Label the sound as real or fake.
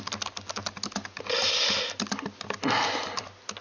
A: real